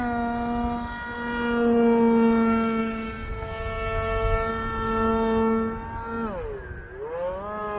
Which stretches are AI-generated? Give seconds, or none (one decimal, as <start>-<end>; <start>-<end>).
2.8-4.5